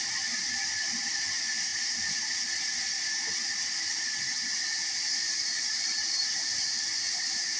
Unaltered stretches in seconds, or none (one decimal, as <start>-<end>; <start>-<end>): none